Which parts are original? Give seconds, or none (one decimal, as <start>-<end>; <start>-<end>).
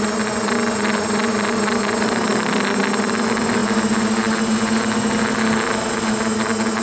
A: 0.0-6.8